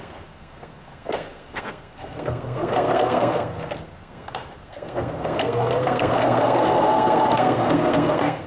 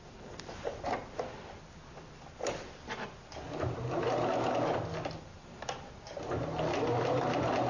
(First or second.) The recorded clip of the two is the second